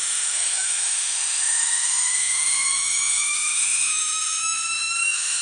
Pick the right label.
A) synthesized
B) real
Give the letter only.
A